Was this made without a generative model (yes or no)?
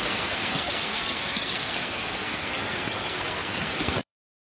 no